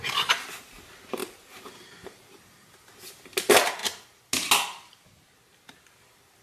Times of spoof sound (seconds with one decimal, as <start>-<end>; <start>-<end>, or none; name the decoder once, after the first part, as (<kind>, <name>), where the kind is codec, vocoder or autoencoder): 1.2-2.2 (vocoder, BigVGAN v2)